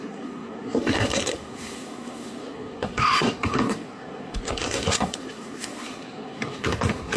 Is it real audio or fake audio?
fake